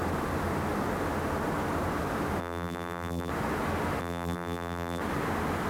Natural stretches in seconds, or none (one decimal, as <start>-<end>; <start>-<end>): 0.0-2.4; 3.3-4.0; 5.0-5.7